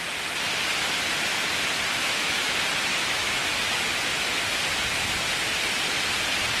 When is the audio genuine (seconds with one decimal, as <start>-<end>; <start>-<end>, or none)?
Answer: 0.0-1.9; 2.5-2.9; 4.4-6.6